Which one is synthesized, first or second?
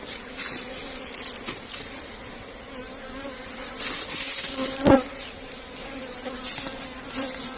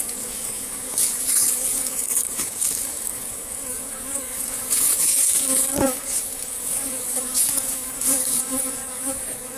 second